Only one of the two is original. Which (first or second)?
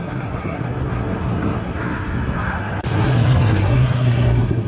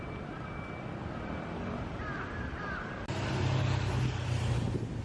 second